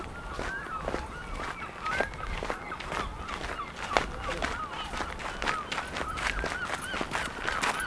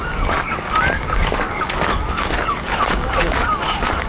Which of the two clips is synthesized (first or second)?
second